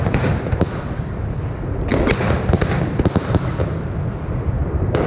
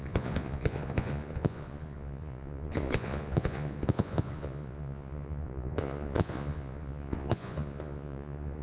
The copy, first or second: second